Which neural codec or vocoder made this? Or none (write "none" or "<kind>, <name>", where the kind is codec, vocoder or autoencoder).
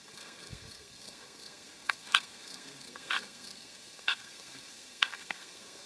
codec, SNAC